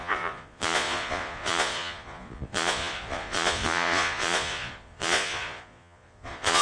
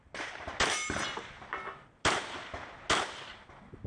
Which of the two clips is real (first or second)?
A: second